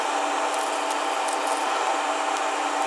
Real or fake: real